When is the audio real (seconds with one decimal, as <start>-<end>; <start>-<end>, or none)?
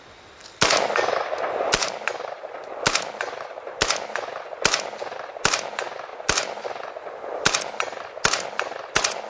0.0-9.3